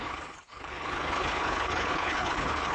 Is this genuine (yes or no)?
no